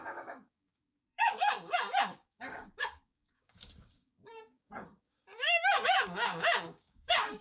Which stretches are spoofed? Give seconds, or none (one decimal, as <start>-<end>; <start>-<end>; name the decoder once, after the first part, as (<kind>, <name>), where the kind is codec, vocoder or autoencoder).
0.0-7.4 (codec, DAC)